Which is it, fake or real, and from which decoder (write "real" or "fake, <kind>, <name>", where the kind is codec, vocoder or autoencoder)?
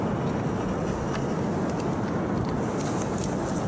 real